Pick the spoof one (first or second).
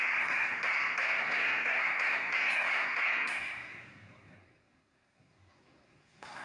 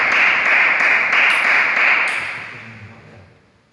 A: first